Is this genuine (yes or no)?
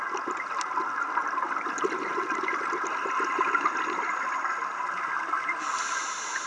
yes